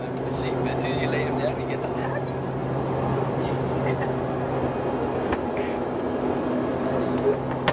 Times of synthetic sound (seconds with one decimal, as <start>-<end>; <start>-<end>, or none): none